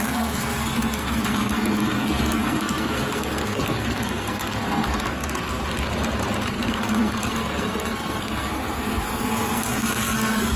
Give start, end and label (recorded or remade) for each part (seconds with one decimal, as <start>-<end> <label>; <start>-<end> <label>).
0.0-5.6 remade; 5.6-6.5 recorded; 6.5-10.6 remade